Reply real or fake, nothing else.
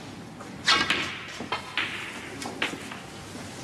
real